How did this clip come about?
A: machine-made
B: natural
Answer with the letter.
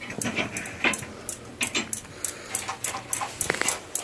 B